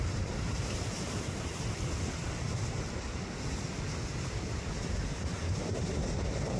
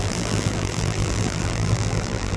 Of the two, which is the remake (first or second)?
second